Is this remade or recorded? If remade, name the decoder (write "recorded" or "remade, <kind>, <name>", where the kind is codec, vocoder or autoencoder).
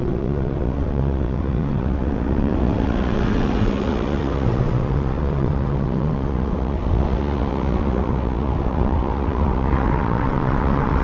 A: remade, vocoder, WaveNeXt